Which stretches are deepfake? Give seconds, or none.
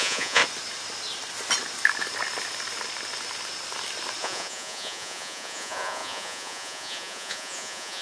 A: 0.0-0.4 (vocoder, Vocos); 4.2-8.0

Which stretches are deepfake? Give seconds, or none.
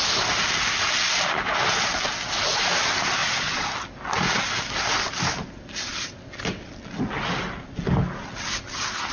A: 3.2-3.7 (vocoder, Vocos)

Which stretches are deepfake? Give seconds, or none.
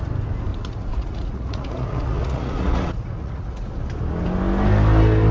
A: 0.5-3.7 (vocoder, Vocos)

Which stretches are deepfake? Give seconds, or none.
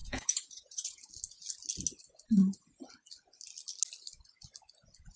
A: 0.0-1.1 (vocoder, Vocos)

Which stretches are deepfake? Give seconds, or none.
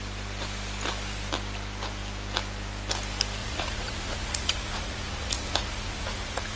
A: 3.4-6.6 (vocoder, Vocos)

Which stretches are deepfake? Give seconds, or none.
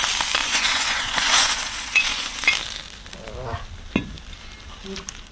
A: 0.4-2.5 (vocoder, Vocos)